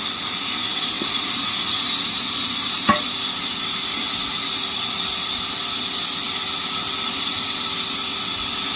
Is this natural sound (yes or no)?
yes